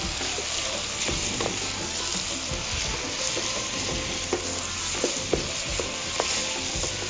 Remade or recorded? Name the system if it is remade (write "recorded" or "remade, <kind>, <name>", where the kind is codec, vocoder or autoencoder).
recorded